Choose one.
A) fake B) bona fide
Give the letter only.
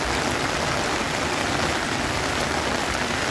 B